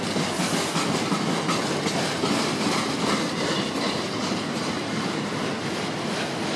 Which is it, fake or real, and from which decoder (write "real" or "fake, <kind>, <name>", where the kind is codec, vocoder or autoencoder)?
real